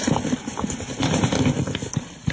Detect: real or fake real